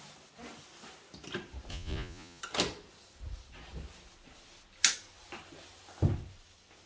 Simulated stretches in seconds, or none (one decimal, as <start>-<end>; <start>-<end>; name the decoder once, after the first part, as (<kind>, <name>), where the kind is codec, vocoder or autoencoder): 1.7-2.4 (vocoder, Vocos)